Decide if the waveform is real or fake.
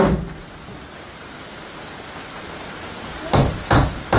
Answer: real